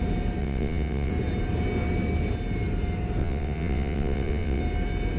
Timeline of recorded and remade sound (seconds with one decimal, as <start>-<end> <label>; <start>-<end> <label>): 0.0-0.4 recorded; 0.4-1.1 remade; 1.1-3.2 recorded; 3.2-4.6 remade; 4.6-5.2 recorded

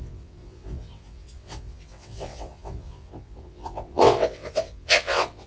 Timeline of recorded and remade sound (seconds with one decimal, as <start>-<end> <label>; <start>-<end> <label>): 0.0-5.5 remade

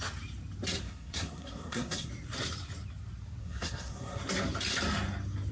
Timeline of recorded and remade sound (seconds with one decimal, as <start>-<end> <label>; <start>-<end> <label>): 0.0-0.8 recorded; 0.8-2.1 remade; 2.1-3.4 recorded; 3.4-4.2 remade; 4.2-5.5 recorded

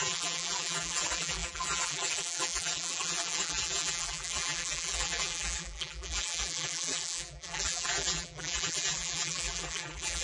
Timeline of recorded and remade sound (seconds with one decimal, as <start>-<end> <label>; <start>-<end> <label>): 0.0-10.2 remade

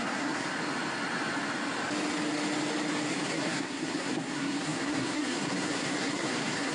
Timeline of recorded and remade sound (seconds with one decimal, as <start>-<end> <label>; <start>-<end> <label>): 0.0-0.5 remade; 0.5-3.1 recorded; 3.1-6.7 remade

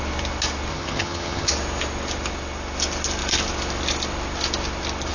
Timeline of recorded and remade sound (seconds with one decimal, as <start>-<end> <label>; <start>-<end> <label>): 0.0-0.7 recorded; 0.7-1.5 remade; 1.5-5.1 recorded

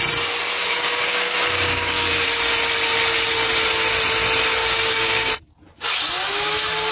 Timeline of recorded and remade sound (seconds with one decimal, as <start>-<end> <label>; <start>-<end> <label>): 0.0-0.6 recorded; 0.6-2.4 remade; 2.4-4.6 recorded; 4.6-5.3 remade; 5.3-6.9 recorded

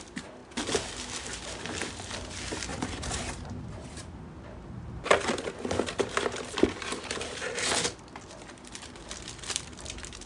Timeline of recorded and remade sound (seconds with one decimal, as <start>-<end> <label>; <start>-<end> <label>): 0.0-0.4 remade; 0.4-1.8 recorded; 1.8-10.3 remade